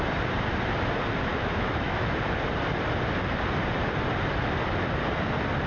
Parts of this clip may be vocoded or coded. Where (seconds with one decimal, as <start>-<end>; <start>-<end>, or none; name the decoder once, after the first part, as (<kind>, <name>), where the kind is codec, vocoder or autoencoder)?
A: 1.3-2.1 (autoencoder, DAC-VAE)